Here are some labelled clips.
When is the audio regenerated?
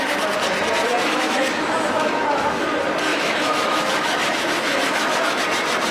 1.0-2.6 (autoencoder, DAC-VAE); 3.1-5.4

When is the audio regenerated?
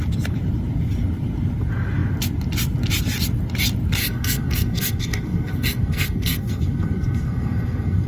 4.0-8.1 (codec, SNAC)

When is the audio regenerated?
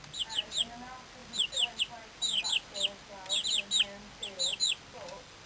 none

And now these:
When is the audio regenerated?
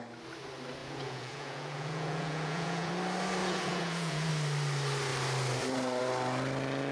0.8-2.9 (vocoder, Vocos); 3.4-4.3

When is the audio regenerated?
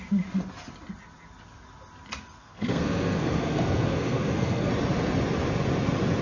2.4-4.7 (codec, SNAC)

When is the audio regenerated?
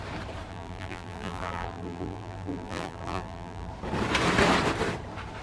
0.5-3.7 (vocoder, BigVGAN v2)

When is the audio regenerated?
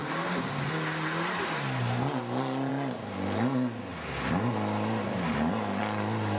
none